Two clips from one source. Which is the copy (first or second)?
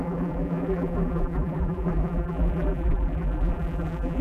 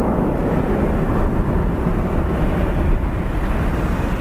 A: first